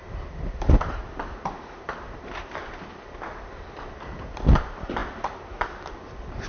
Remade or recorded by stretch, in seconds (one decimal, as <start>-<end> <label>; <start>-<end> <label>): 0.0-6.5 recorded